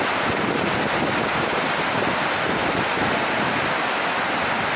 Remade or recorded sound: remade